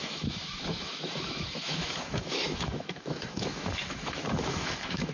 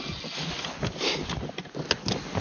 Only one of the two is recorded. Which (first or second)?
second